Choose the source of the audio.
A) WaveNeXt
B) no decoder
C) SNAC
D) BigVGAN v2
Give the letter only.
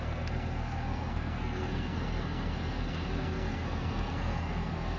C